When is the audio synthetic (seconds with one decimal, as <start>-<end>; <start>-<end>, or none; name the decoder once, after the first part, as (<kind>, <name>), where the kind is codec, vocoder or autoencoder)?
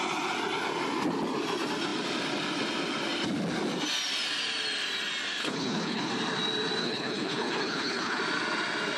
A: 5.4-6.1 (codec, HILCodec); 6.8-8.2